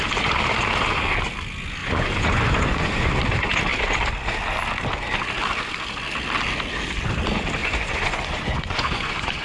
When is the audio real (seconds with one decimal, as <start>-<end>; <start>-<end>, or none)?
0.0-1.8; 3.1-7.6